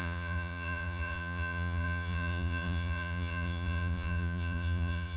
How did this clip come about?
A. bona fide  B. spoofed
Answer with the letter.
B